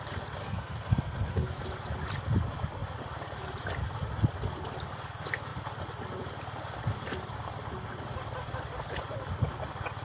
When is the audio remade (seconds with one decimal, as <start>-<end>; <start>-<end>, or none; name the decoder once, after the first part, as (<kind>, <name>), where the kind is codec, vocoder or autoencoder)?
0.4-1.5 (codec, SNAC)